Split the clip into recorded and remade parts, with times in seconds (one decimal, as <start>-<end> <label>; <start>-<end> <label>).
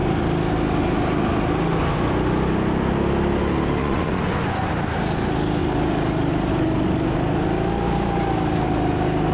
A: 0.0-3.8 recorded; 3.8-4.7 remade; 4.7-9.3 recorded